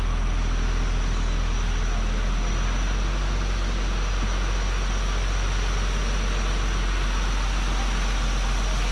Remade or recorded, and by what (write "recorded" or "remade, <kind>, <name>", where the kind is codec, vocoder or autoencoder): recorded